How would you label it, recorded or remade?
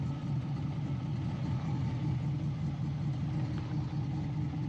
recorded